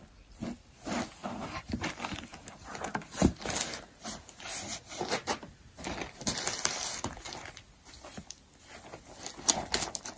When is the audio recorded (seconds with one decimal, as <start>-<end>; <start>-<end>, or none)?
0.0-10.2